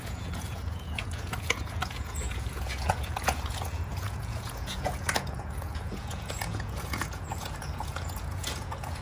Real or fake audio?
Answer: fake